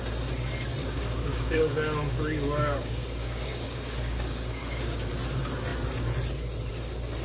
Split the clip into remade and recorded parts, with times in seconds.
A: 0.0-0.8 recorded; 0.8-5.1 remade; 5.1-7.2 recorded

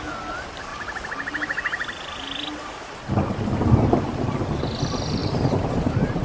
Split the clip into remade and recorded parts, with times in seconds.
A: 0.0-5.2 recorded; 5.2-6.2 remade

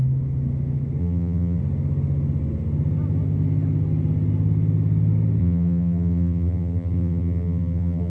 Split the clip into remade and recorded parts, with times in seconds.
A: 0.0-1.0 recorded; 1.0-1.6 remade; 1.6-5.4 recorded; 5.4-8.1 remade

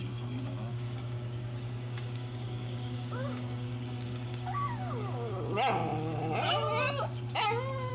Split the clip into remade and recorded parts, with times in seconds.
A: 0.0-0.7 recorded; 0.7-5.3 remade; 5.3-7.9 recorded

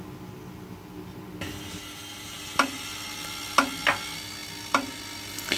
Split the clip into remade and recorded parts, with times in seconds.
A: 0.0-5.6 recorded

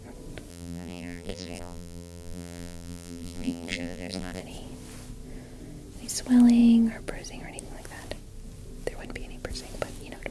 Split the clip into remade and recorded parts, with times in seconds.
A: 0.0-0.5 recorded; 0.5-4.4 remade; 4.4-10.3 recorded